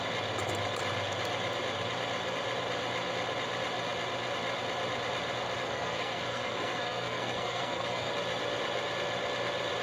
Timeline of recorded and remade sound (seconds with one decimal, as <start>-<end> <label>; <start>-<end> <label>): 0.0-5.6 recorded; 5.6-8.1 remade; 8.1-9.8 recorded

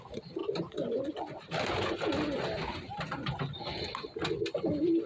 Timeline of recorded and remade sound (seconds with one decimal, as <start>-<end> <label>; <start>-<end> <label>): 0.0-5.1 recorded

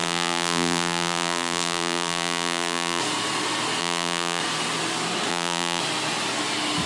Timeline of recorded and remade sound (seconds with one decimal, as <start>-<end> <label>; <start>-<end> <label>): 0.0-3.0 remade; 3.0-3.8 recorded; 3.8-4.4 remade; 4.4-5.3 recorded; 5.3-5.8 remade; 5.8-6.9 recorded